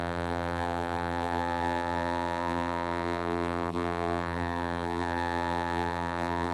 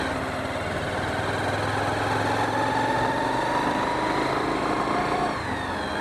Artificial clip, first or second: first